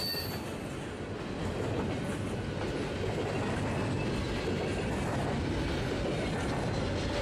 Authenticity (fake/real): real